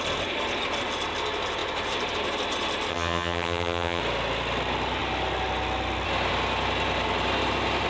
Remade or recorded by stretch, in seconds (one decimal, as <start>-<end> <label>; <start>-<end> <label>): 0.0-2.9 recorded; 2.9-4.0 remade; 4.0-7.9 recorded